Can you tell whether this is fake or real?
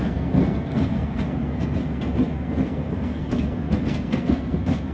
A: fake